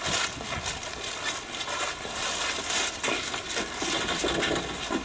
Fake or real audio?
real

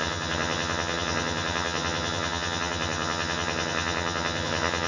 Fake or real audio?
fake